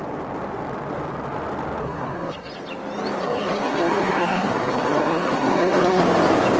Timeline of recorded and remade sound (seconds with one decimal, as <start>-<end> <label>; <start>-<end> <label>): 0.0-1.8 recorded; 1.8-2.5 remade; 2.5-3.2 recorded; 3.2-6.0 remade; 6.0-6.6 recorded